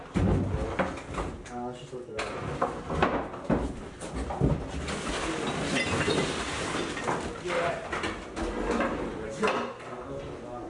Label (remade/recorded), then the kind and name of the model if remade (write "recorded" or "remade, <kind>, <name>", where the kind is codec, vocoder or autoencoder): recorded